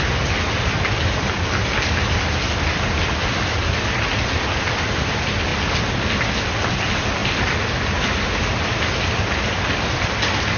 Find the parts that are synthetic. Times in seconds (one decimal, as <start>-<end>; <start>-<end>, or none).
none